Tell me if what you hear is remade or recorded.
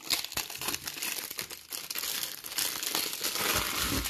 recorded